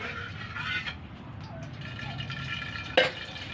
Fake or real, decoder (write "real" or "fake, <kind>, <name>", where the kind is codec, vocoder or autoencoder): real